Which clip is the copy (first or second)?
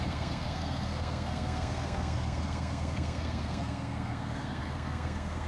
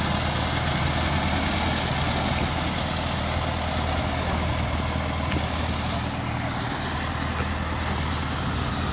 first